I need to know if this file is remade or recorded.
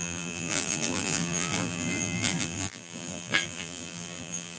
remade